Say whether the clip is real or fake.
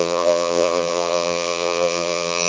fake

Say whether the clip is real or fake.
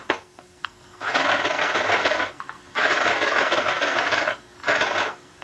fake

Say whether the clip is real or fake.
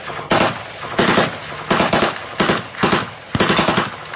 real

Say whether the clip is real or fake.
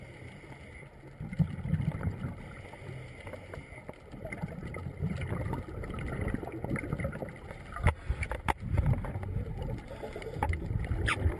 real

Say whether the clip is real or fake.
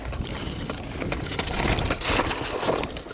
real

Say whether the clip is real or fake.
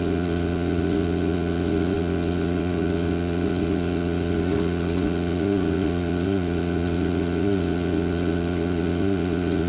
fake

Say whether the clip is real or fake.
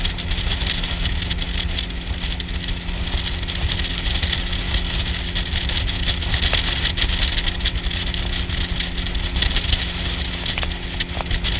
real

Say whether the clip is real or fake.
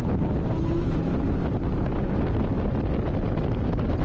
real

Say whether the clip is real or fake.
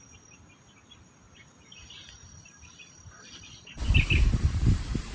real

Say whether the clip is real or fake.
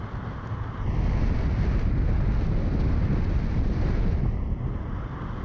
real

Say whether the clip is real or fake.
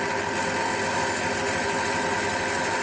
real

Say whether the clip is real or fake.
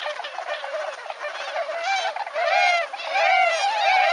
fake